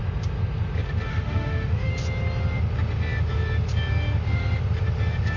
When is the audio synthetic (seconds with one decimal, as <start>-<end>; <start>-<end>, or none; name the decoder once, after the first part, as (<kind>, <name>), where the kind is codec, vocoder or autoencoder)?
1.1-1.9 (autoencoder, DAC-VAE)